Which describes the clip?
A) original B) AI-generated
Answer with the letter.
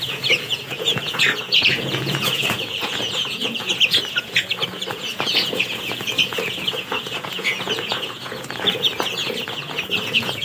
B